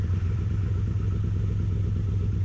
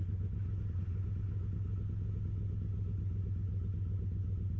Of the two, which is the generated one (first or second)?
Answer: first